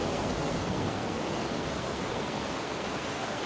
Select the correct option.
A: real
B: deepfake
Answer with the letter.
B